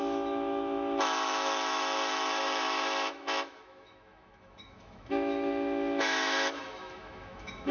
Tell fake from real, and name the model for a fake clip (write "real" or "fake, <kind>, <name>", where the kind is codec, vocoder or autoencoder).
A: fake, autoencoder, DAC-VAE